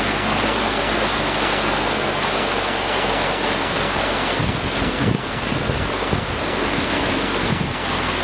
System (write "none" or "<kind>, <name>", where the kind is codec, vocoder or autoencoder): codec, SNAC